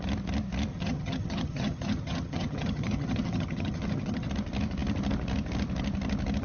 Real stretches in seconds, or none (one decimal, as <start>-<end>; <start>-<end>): 0.0-0.7; 4.3-6.4